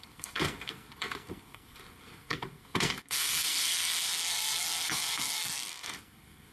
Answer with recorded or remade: remade